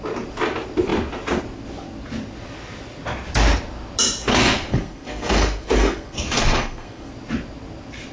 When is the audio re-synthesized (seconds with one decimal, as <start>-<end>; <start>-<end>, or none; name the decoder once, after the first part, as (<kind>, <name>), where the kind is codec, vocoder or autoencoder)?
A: 4.3-7.1 (codec, SNAC)